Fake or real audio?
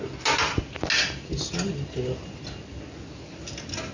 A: real